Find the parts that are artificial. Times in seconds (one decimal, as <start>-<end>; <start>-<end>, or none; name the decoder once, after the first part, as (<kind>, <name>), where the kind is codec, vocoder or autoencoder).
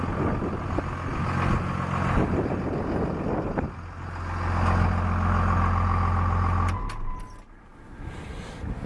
none